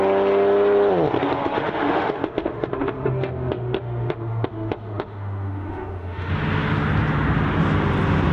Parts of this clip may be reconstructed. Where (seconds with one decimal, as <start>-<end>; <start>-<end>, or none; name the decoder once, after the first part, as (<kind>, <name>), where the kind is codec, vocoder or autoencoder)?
1.4-6.3 (autoencoder, DAC-VAE)